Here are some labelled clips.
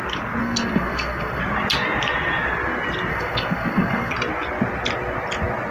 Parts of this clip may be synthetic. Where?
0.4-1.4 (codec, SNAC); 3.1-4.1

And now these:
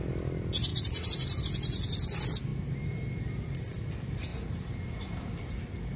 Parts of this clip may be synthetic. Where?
0.7-1.4 (vocoder, BigVGAN v2); 4.3-5.2

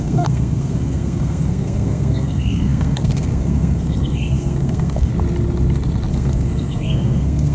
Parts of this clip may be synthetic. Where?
0.0-5.1 (codec, SNAC); 6.1-7.5